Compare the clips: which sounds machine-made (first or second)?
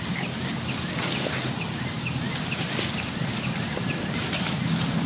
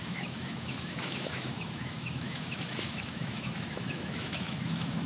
second